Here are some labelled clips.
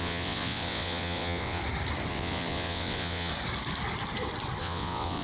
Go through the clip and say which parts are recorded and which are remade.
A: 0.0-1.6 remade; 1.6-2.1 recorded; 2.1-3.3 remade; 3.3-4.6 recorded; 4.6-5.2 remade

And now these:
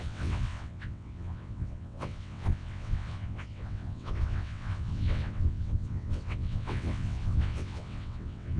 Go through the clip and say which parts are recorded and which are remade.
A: 0.0-8.6 remade

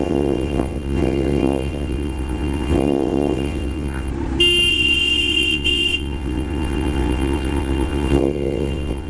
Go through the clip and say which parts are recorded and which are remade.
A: 0.0-4.1 remade; 4.1-4.7 recorded; 4.7-9.1 remade

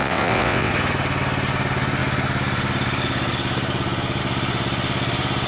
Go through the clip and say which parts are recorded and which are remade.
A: 0.0-0.7 remade; 0.7-5.5 recorded

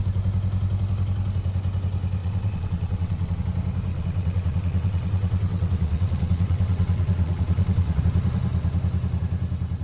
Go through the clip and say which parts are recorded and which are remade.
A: 0.0-2.2 recorded; 2.2-3.4 remade; 3.4-3.9 recorded; 3.9-8.0 remade; 8.0-9.8 recorded